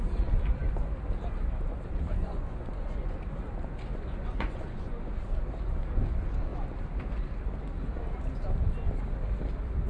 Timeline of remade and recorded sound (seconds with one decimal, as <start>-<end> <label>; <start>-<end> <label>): 0.0-2.2 recorded; 2.2-3.2 remade; 3.2-3.9 recorded; 3.9-5.1 remade; 5.1-9.9 recorded